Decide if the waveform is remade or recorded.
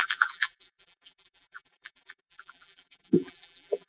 remade